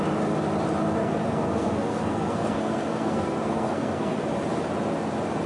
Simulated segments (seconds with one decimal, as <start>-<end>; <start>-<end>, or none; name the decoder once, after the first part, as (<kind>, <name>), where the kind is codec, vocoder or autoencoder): 1.0-4.3 (codec, SNAC)